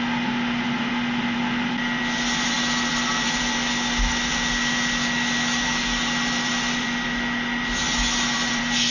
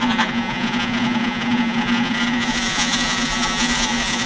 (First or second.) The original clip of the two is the first